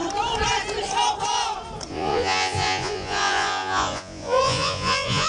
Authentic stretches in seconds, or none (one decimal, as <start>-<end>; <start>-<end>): 0.0-1.9